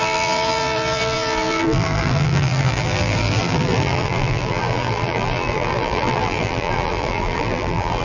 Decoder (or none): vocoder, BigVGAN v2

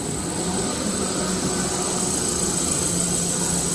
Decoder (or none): none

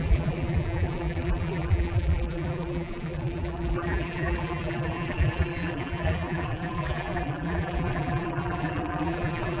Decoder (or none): vocoder, BigVGAN v2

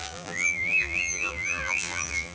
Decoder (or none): vocoder, BigVGAN v2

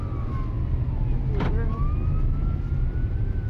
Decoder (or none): none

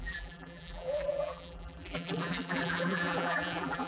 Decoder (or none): vocoder, BigVGAN v2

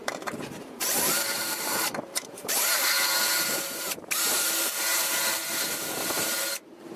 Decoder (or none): vocoder, BigVGAN v2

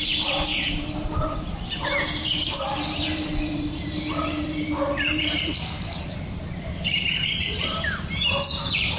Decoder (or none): vocoder, BigVGAN v2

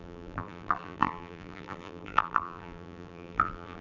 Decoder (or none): vocoder, BigVGAN v2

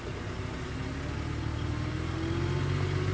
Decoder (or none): none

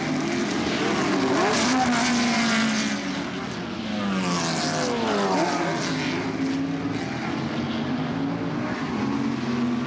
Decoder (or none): none